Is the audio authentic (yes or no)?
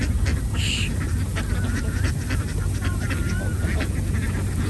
yes